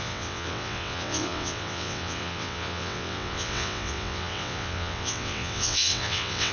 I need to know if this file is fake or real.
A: fake